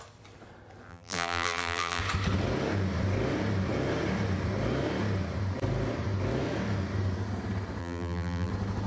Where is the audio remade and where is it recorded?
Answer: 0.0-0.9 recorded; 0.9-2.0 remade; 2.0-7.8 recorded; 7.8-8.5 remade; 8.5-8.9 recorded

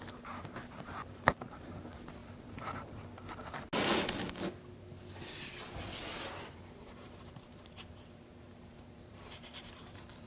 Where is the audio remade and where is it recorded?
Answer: 0.0-2.2 remade; 2.2-6.5 recorded; 6.5-10.3 remade